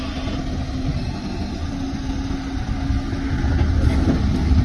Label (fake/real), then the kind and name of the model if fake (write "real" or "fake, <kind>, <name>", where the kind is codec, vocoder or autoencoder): real